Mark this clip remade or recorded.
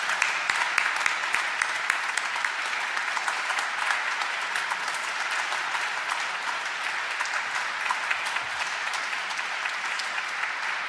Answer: recorded